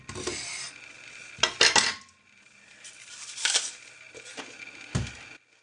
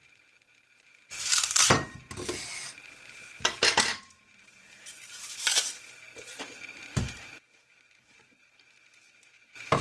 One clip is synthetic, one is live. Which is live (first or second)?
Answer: first